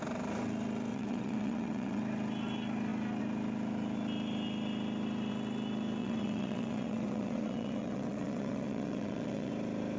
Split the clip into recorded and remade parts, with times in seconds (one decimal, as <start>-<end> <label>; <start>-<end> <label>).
0.0-0.9 recorded; 0.9-2.0 remade; 2.0-6.0 recorded; 6.0-9.5 remade; 9.5-10.0 recorded